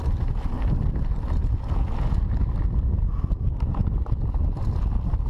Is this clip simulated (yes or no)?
no